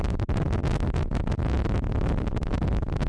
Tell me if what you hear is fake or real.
real